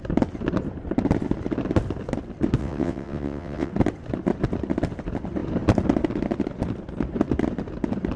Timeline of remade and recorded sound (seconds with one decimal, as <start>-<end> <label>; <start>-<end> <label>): 0.0-2.6 recorded; 2.6-3.7 remade; 3.7-8.2 recorded